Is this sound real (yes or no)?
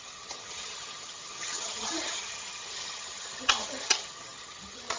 no